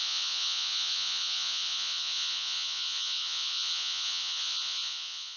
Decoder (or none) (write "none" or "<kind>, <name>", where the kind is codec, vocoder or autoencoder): vocoder, Vocos